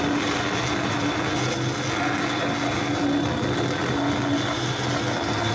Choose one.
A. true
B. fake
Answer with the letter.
A